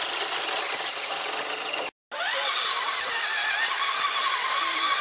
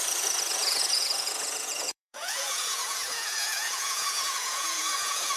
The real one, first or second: first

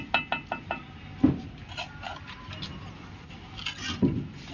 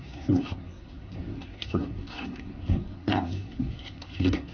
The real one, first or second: first